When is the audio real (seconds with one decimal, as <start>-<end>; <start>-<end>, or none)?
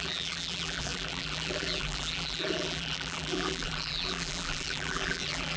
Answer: none